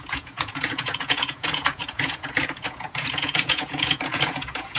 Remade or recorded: remade